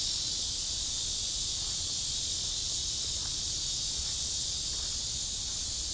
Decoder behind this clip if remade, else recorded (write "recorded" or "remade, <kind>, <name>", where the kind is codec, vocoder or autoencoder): recorded